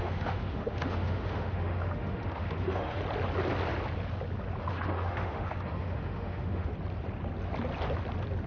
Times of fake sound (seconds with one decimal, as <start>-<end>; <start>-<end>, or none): 0.0-3.0; 4.6-6.7